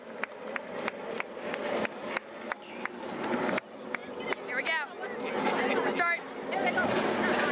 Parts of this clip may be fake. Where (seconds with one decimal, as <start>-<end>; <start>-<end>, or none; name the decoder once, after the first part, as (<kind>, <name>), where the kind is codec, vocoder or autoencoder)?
none